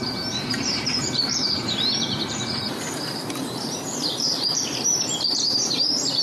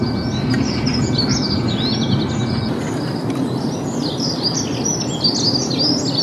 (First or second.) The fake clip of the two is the first